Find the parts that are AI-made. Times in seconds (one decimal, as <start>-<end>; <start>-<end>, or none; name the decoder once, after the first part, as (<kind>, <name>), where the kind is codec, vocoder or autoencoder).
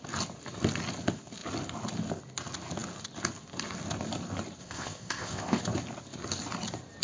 4.6-5.6 (codec, ZipCodec)